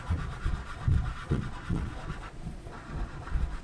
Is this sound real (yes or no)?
no